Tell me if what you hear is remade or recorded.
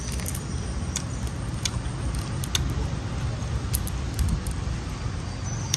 recorded